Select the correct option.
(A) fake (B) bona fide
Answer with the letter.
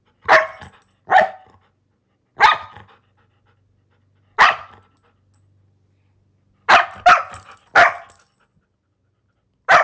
B